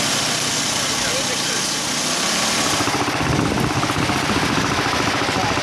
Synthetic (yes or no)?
no